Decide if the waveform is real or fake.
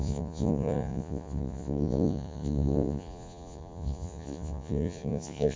fake